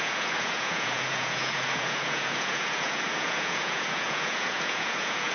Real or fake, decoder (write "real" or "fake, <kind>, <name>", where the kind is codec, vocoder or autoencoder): fake, vocoder, Vocos